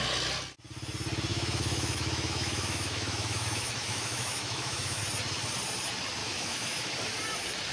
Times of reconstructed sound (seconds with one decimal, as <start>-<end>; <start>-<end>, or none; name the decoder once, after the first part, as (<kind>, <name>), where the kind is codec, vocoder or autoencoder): 1.3-5.0 (autoencoder, DAC-VAE); 6.2-6.9